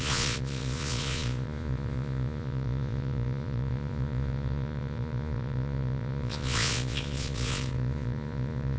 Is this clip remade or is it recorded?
remade